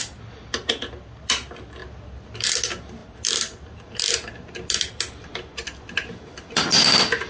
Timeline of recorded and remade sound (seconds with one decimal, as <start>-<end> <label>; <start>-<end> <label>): 0.0-7.3 recorded